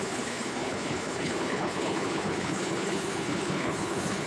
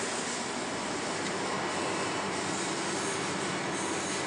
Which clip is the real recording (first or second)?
second